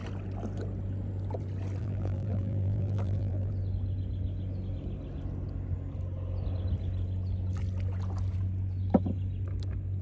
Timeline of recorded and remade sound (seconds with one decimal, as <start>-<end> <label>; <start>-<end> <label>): 0.0-1.8 recorded; 1.8-3.5 remade; 3.5-10.0 recorded